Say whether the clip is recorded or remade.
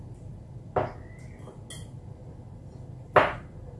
recorded